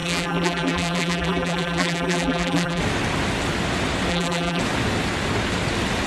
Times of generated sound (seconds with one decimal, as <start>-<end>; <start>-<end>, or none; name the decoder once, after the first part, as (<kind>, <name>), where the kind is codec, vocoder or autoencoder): 0.0-2.8 (vocoder, BigVGAN v2); 4.1-4.6